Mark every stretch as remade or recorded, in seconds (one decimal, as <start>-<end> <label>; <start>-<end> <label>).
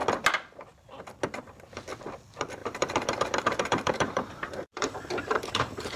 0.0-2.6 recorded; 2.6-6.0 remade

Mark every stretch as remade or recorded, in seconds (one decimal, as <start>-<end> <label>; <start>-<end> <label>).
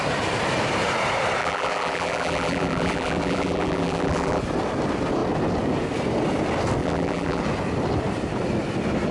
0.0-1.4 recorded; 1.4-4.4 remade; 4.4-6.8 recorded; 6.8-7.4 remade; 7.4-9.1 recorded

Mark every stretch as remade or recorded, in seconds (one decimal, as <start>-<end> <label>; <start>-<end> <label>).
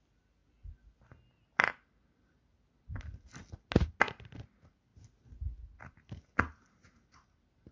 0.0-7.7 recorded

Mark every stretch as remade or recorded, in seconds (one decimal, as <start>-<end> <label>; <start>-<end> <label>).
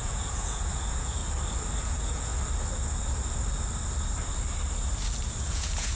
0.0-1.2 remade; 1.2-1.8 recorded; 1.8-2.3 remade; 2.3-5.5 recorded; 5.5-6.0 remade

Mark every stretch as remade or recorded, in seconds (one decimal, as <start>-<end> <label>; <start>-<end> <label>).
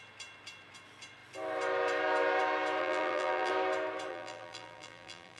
0.0-2.8 recorded; 2.8-3.5 remade; 3.5-4.1 recorded; 4.1-5.4 remade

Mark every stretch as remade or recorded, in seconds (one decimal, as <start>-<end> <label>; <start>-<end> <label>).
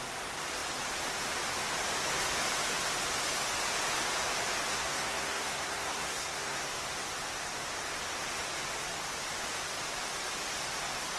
0.0-4.7 recorded; 4.7-6.6 remade; 6.6-11.2 recorded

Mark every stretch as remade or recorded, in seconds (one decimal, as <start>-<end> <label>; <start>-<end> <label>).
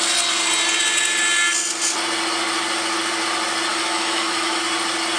0.0-3.7 recorded; 3.7-4.6 remade; 4.6-5.2 recorded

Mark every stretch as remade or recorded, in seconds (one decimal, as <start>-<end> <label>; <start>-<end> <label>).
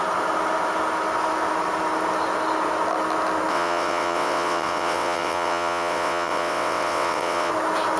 0.0-3.5 recorded; 3.5-7.5 remade; 7.5-8.0 recorded